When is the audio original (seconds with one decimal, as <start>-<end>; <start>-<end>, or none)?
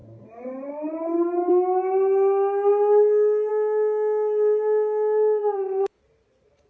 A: 0.0-5.4; 6.0-6.7